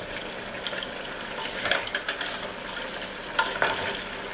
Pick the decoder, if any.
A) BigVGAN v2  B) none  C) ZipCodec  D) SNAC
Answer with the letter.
B